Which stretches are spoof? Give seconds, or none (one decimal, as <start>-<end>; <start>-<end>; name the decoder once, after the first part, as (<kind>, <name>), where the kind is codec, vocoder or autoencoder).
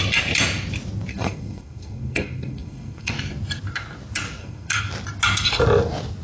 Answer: 1.1-3.1 (codec, SNAC); 4.4-4.9